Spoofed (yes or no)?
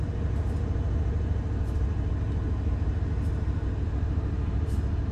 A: no